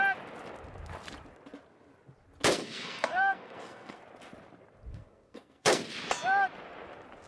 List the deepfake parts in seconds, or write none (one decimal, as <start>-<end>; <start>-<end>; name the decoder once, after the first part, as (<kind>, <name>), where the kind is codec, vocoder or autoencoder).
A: 2.5-4.0 (codec, SNAC); 4.9-5.8